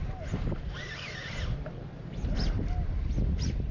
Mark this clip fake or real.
real